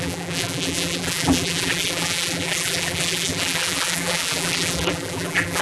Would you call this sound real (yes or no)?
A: no